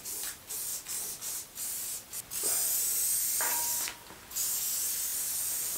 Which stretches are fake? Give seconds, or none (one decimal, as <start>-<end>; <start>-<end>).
none